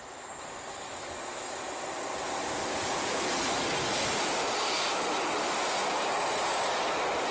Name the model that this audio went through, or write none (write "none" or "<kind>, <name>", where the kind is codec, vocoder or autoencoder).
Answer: none